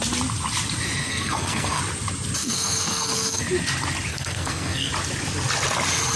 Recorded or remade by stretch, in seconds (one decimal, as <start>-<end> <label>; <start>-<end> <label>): 0.0-1.0 recorded; 1.0-1.8 remade; 1.8-2.4 recorded; 2.4-3.4 remade; 3.4-4.1 recorded; 4.1-4.9 remade; 4.9-6.2 recorded